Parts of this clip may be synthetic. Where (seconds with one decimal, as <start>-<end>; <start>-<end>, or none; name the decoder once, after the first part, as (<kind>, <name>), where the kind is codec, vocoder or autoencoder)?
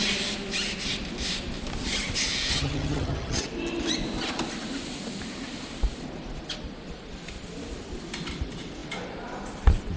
2.5-3.4 (vocoder, HiFi-GAN)